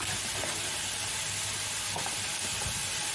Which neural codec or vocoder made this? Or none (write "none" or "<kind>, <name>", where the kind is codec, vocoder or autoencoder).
none